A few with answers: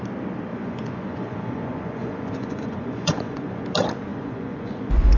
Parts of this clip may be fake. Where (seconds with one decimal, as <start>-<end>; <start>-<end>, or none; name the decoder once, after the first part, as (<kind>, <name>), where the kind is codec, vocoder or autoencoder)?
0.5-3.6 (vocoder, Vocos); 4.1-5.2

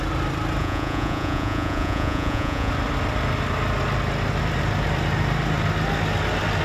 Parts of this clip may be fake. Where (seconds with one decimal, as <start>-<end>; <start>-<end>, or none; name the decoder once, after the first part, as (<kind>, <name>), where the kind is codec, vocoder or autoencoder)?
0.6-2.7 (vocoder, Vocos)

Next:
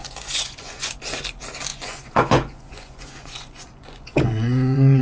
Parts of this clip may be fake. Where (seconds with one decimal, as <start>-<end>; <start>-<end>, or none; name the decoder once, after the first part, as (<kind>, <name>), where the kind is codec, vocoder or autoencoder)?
0.0-0.9 (vocoder, Vocos); 1.7-5.0

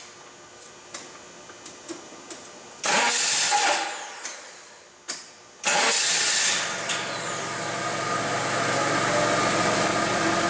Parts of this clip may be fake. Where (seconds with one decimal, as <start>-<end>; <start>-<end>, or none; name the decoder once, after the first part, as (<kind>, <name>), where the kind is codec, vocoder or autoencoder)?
none

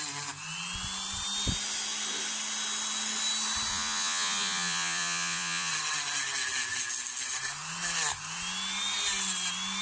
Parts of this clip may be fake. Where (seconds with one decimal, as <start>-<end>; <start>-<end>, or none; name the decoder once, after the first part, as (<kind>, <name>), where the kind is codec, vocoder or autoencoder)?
3.7-5.7 (vocoder, Vocos)

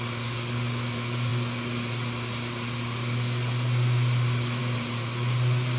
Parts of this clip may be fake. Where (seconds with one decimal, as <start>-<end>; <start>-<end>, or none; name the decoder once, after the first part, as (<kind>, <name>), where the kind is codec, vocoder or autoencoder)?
none

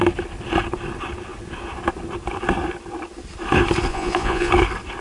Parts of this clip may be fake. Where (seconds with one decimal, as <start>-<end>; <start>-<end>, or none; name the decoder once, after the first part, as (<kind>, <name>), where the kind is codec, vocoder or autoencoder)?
3.9-4.5 (vocoder, Vocos)

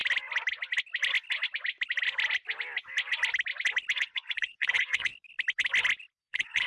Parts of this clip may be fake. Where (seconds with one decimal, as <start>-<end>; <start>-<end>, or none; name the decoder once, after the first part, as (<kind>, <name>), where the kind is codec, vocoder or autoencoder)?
4.0-5.1 (vocoder, Vocos); 6.1-6.7